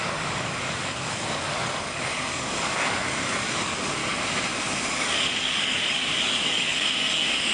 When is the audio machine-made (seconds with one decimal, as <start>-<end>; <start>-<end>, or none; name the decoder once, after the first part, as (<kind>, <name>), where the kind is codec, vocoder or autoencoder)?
0.0-4.0 (codec, DAC); 4.9-7.5